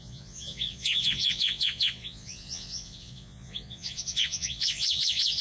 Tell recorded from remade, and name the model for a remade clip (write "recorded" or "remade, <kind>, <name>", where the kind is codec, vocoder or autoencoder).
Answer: remade, vocoder, Vocos